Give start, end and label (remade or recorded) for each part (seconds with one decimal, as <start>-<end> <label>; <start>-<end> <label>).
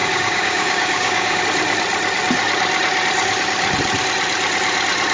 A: 0.0-1.4 remade; 1.4-5.1 recorded